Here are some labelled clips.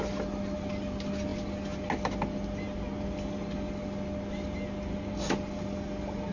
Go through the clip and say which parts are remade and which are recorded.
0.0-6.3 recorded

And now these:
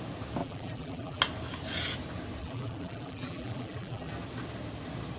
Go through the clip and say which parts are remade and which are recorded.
0.0-0.4 recorded; 0.4-1.2 remade; 1.2-2.4 recorded; 2.4-4.1 remade; 4.1-5.2 recorded

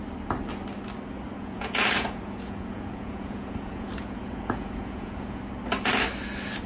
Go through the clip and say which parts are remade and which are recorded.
0.0-1.4 recorded; 1.4-5.4 remade; 5.4-6.7 recorded